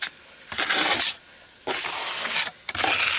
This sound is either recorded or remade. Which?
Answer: recorded